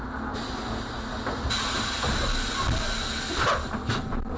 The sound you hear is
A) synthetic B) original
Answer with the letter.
B